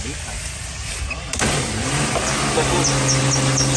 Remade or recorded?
recorded